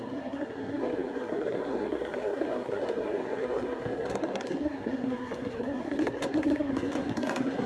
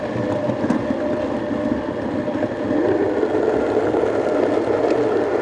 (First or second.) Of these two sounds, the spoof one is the first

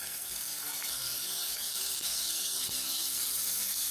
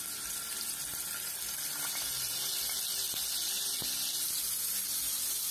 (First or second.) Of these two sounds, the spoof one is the first